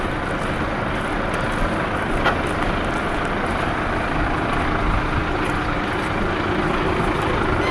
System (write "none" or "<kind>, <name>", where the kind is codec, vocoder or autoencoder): none